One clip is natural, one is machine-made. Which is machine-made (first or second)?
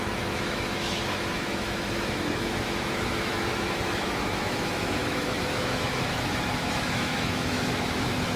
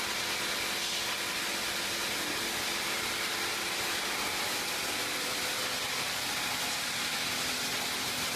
first